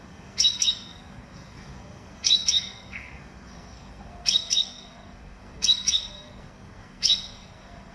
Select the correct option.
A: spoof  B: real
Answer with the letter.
A